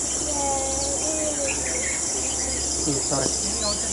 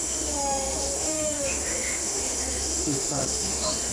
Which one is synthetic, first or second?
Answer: second